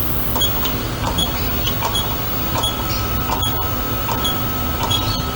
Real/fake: real